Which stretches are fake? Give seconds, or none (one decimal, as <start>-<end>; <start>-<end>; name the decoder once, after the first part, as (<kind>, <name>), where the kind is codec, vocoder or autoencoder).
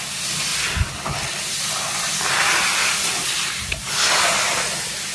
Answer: none